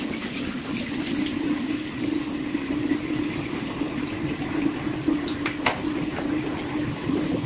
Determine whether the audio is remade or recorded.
recorded